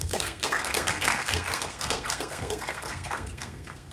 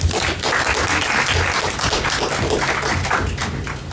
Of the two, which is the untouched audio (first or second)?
second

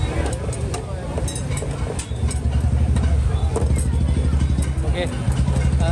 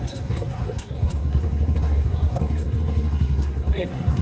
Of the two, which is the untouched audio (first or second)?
first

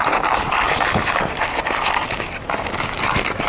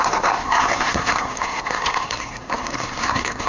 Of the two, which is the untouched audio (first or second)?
first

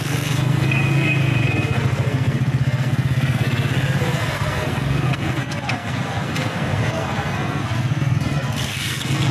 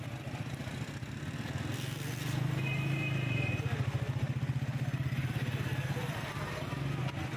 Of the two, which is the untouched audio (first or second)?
second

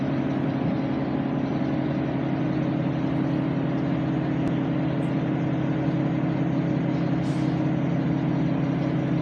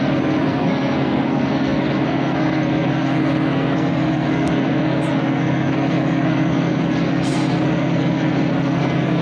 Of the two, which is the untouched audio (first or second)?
first